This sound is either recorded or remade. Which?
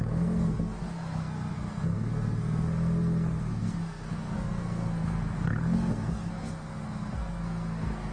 remade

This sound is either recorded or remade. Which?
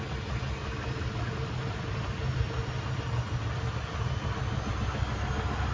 recorded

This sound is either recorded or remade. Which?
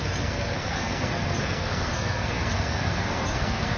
remade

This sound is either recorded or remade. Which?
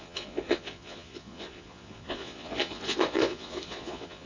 remade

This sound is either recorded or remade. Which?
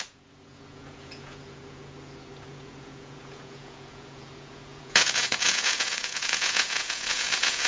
remade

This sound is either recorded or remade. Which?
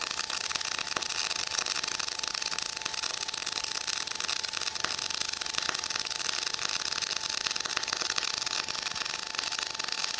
recorded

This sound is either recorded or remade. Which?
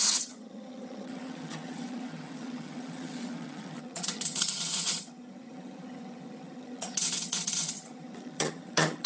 remade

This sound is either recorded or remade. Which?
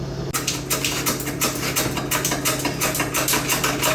recorded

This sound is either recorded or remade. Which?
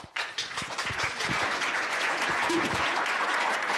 remade